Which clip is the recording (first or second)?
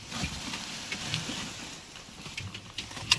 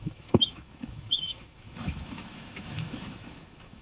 first